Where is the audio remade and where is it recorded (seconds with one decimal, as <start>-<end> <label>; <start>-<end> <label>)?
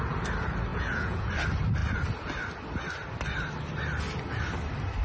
0.0-0.7 recorded; 0.7-1.3 remade; 1.3-5.0 recorded